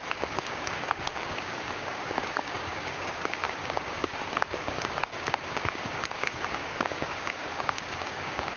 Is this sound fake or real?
fake